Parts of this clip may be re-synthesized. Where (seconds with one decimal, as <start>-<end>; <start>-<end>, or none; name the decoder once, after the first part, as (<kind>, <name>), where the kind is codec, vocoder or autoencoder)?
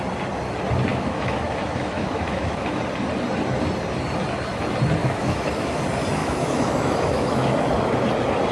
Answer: 0.9-2.8 (autoencoder, DAC-VAE); 5.0-5.8; 6.2-7.7